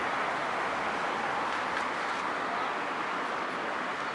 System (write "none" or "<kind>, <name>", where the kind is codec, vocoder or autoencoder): none